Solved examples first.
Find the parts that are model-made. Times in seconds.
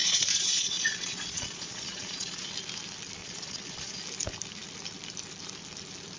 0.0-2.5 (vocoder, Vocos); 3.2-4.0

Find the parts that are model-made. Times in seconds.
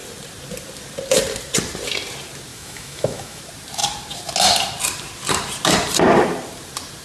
2.5-3.4 (autoencoder, DAC-VAE)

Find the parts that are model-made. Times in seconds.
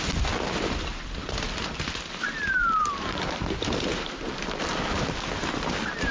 2.8-5.2 (vocoder, BigVGAN v2)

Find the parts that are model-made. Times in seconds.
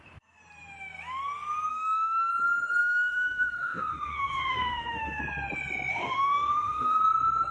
1.7-2.3 (autoencoder, DAC-VAE); 2.8-5.2; 5.9-7.0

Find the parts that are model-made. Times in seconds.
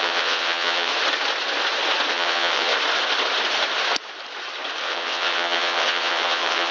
0.0-0.9 (vocoder, WaveNeXt); 2.1-2.7; 4.8-6.7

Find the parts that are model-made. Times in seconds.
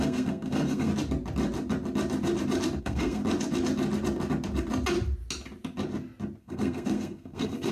0.0-0.9 (codec, SNAC); 2.8-3.2; 6.4-7.7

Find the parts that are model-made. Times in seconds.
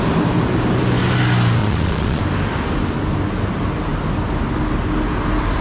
1.6-2.2 (vocoder, Vocos)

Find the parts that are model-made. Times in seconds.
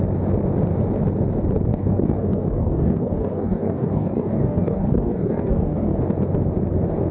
1.7-6.0 (codec, DAC)